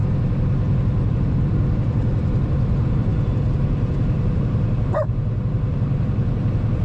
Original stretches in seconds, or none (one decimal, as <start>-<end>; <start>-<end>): 0.0-1.1